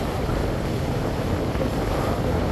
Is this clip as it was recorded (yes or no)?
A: yes